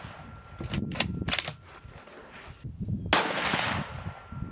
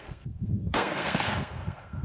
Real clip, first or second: first